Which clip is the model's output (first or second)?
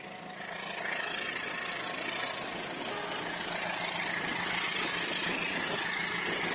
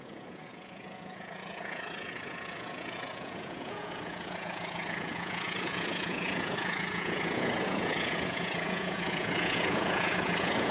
second